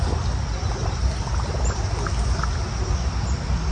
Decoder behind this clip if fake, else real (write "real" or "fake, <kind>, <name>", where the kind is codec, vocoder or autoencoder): real